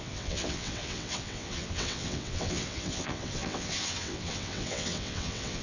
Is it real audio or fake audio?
fake